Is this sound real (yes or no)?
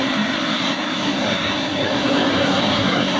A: no